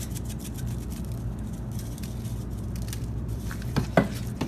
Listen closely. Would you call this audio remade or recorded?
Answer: remade